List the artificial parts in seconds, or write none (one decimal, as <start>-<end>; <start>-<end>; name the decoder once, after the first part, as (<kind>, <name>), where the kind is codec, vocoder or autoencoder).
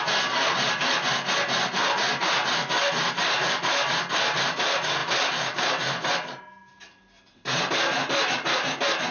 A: none